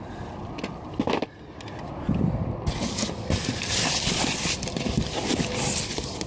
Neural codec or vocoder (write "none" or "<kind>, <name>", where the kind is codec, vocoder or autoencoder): none